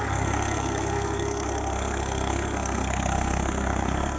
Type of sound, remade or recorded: remade